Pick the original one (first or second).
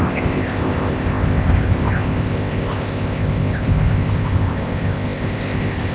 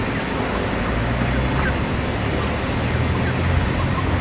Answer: second